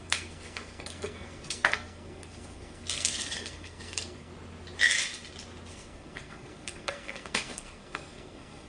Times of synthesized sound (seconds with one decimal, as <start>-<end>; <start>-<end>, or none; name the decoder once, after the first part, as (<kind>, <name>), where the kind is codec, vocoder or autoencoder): 0.0-4.3 (codec, SNAC); 5.7-8.7